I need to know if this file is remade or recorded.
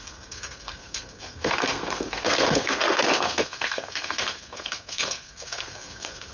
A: remade